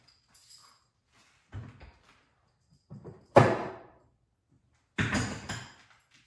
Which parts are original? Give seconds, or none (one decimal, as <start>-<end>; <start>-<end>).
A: 0.0-6.3